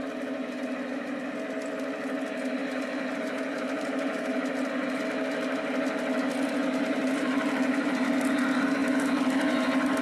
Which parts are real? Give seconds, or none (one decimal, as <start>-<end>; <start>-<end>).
0.0-2.6; 5.0-7.0; 8.1-10.0